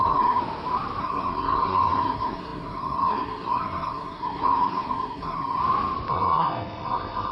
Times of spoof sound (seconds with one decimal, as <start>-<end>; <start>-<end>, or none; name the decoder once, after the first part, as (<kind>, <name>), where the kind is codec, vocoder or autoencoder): 0.0-0.4 (codec, SNAC); 1.0-5.6; 6.1-7.3